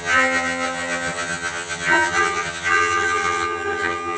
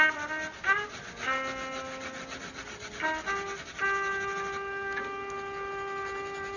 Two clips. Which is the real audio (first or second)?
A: second